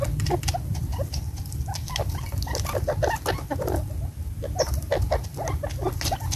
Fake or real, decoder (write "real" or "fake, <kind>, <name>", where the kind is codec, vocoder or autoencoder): fake, vocoder, BigVGAN v2